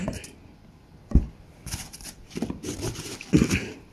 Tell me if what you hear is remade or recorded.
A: recorded